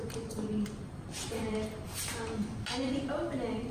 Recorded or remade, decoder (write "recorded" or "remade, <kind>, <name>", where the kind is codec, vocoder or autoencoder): recorded